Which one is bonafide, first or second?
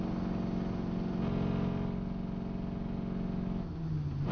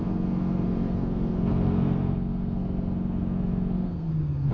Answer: first